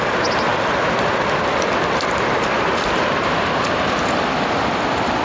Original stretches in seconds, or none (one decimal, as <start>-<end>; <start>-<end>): 0.0-5.2